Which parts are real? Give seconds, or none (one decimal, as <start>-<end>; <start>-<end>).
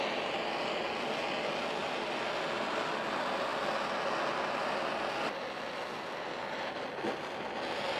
0.0-8.0